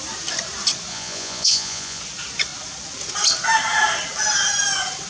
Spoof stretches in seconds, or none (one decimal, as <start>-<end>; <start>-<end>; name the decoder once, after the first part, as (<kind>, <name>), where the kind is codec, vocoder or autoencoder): 0.9-2.0 (vocoder, Vocos)